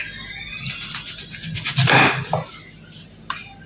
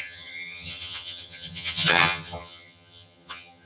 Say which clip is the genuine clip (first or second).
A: first